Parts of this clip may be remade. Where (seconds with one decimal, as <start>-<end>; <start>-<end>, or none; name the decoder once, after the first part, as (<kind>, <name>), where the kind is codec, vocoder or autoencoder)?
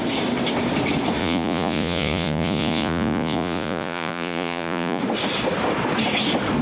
1.2-5.0 (vocoder, Vocos)